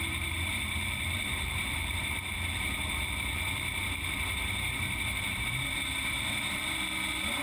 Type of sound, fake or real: fake